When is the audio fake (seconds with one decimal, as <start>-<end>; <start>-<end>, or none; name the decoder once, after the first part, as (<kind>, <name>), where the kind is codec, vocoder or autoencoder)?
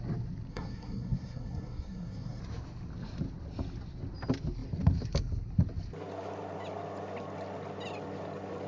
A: 0.5-2.4 (codec, SNAC)